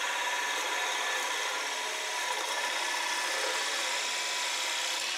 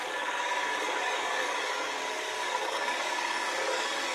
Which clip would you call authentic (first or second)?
first